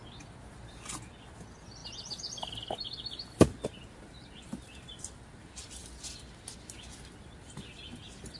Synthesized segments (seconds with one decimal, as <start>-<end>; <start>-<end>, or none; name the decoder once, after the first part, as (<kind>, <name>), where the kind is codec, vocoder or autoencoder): none